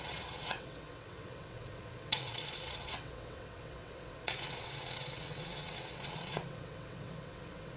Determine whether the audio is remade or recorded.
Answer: remade